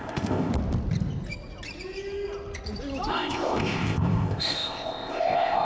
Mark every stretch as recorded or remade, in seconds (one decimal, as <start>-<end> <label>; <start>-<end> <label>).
0.0-0.5 remade; 0.5-3.1 recorded; 3.1-5.6 remade